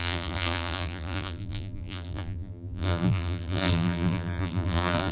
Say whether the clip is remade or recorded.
remade